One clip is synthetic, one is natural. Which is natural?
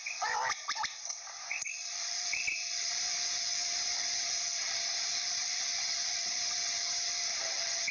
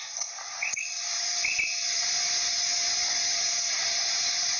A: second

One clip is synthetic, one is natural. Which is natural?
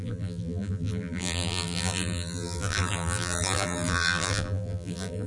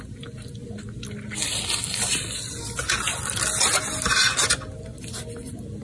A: second